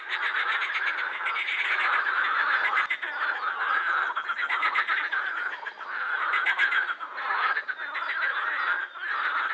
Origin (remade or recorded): recorded